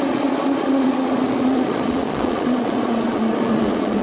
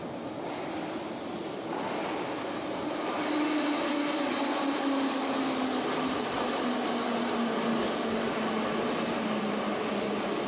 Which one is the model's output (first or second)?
first